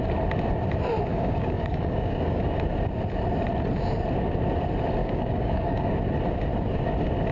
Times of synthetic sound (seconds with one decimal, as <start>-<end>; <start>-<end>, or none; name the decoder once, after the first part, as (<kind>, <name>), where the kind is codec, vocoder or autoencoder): 1.1-2.4 (codec, DAC); 5.0-5.9